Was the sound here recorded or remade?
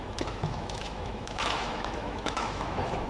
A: remade